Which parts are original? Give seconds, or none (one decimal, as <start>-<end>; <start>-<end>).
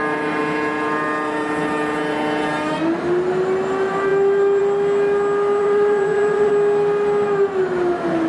0.0-5.6; 6.5-8.3